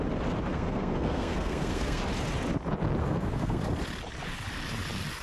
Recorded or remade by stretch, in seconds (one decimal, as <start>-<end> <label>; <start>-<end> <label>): 0.0-0.5 recorded; 0.5-2.0 remade; 2.0-3.0 recorded; 3.0-3.6 remade; 3.6-5.2 recorded

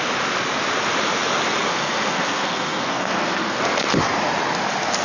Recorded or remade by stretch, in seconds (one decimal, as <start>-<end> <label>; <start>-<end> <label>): 0.0-1.7 recorded; 1.7-3.6 remade; 3.6-5.0 recorded

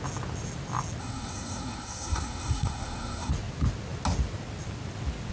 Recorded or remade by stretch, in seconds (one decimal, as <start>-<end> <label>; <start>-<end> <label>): 0.0-1.0 recorded; 1.0-3.3 remade; 3.3-5.3 recorded

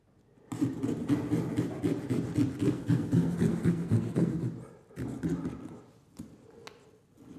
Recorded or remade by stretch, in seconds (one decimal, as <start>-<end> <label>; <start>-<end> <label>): 0.0-2.6 recorded; 2.6-4.4 remade; 4.4-7.4 recorded

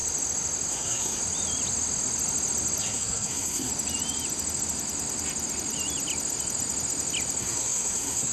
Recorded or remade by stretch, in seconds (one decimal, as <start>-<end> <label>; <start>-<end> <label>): 0.0-0.7 recorded; 0.7-1.2 remade; 1.2-2.8 recorded; 2.8-3.7 remade; 3.7-7.4 recorded; 7.4-8.3 remade

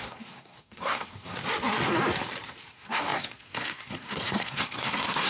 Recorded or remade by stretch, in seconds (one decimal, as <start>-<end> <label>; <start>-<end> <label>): 0.0-1.4 remade; 1.4-2.7 recorded; 2.7-5.3 remade

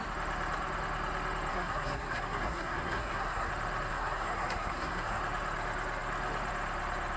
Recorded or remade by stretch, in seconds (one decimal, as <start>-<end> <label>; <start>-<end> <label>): 0.0-1.5 recorded; 1.5-3.5 remade; 3.5-3.9 recorded; 3.9-5.2 remade; 5.2-7.2 recorded

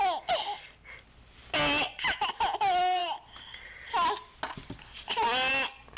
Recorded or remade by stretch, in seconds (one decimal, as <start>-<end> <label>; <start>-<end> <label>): 0.0-6.0 recorded